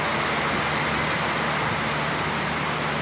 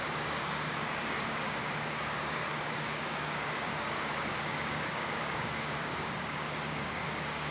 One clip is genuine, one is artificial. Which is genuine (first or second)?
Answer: first